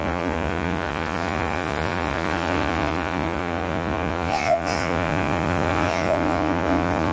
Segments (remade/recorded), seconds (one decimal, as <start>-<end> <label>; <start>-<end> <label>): 0.0-7.1 remade